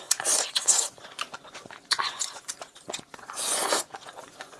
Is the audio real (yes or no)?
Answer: no